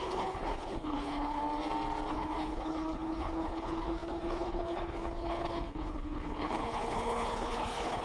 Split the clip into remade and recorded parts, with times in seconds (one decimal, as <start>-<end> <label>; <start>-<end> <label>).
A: 0.0-1.4 remade; 1.4-2.1 recorded; 2.1-8.0 remade